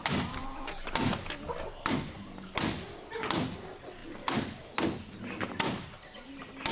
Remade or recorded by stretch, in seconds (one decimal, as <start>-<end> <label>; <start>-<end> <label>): 0.0-6.7 recorded